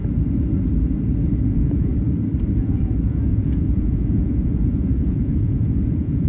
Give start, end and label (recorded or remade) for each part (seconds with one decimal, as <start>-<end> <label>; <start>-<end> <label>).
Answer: 0.0-1.4 recorded; 1.4-1.9 remade; 1.9-2.6 recorded; 2.6-6.3 remade